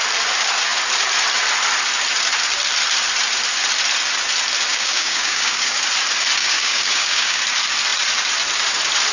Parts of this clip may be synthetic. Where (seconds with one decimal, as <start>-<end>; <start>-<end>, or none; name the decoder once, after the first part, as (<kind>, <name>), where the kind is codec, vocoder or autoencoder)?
4.7-5.8 (codec, DAC); 6.4-7.4